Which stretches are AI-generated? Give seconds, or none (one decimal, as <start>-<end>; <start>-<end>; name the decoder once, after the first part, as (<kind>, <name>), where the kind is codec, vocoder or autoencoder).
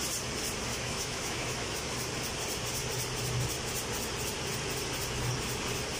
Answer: 0.7-1.9 (autoencoder, DAC-VAE)